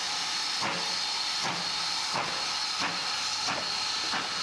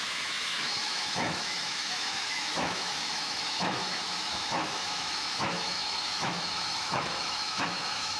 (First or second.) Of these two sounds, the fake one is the second